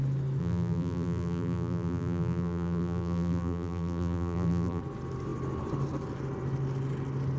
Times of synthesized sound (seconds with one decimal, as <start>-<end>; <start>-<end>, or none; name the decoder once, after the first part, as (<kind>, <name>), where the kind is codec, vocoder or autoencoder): 0.4-4.8 (vocoder, BigVGAN v2)

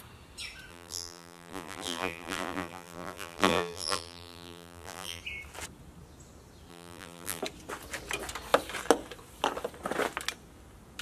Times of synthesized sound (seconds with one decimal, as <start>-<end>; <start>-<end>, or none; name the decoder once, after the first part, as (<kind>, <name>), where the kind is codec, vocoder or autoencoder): 0.7-5.2 (vocoder, BigVGAN v2); 6.7-7.4

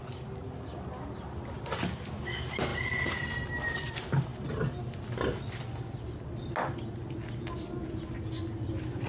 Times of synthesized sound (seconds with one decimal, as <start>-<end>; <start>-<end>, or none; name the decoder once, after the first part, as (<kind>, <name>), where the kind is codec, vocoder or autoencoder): none